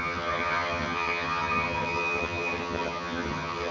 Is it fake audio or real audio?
fake